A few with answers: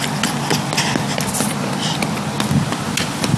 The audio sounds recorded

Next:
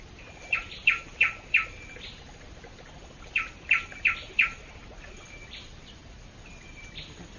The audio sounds remade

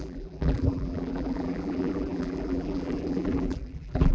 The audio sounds remade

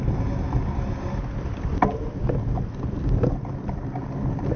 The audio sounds recorded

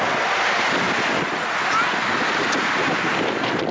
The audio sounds recorded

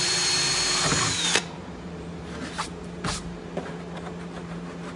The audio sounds remade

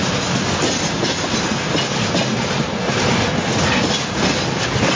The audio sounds recorded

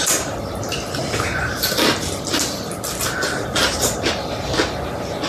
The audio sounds recorded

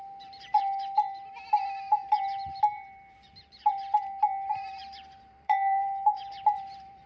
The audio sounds remade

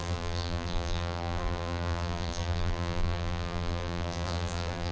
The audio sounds remade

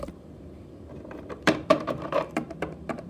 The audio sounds remade